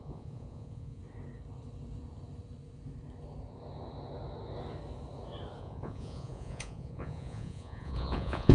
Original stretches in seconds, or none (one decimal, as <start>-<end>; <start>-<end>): 1.0-5.6